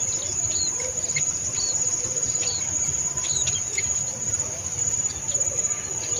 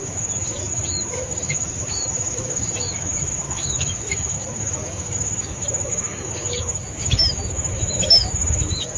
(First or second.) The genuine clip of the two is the first